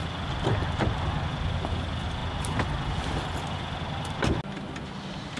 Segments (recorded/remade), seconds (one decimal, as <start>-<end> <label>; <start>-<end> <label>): 0.0-5.4 recorded